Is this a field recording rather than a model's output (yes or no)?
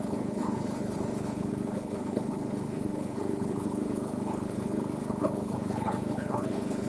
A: no